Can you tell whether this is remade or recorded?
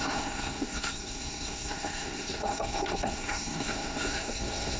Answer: remade